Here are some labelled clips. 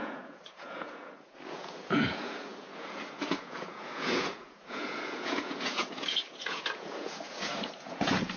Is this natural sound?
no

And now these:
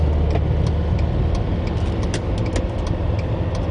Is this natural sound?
yes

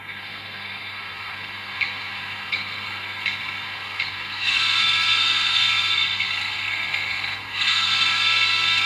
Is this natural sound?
no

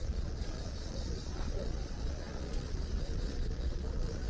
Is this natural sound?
no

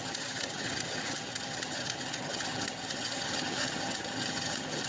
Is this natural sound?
no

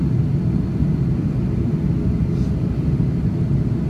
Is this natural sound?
yes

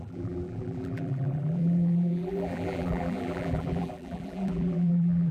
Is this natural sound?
no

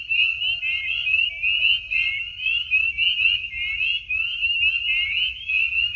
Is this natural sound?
yes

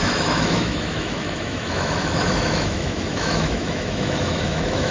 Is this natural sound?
no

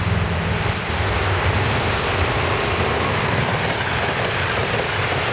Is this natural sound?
yes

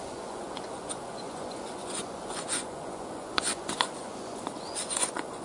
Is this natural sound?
no